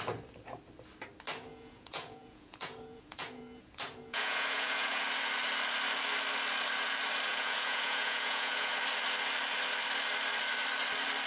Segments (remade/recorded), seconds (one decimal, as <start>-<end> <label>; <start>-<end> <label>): 0.0-1.5 recorded; 1.5-5.0 remade; 5.0-7.3 recorded; 7.3-8.7 remade; 8.7-11.3 recorded